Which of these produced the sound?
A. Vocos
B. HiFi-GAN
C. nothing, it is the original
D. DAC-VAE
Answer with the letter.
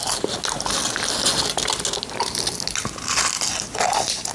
C